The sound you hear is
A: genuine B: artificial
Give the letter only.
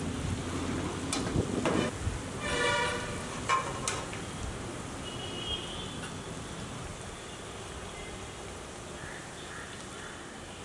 A